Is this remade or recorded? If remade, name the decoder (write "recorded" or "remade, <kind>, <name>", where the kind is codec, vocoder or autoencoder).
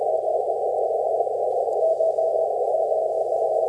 remade, vocoder, BigVGAN v2